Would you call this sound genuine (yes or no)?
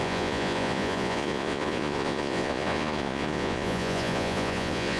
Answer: no